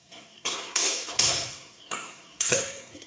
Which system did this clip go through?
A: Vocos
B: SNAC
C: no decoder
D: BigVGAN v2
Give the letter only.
B